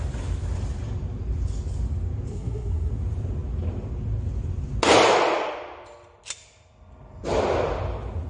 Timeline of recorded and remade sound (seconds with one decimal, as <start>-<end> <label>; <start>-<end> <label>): 0.0-2.3 recorded; 2.3-2.9 remade; 2.9-8.3 recorded